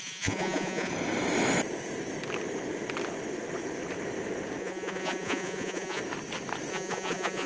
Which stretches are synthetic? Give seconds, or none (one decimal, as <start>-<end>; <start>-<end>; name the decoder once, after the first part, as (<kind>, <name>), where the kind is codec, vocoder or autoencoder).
0.0-0.9 (vocoder, Vocos); 4.6-6.0; 6.7-7.5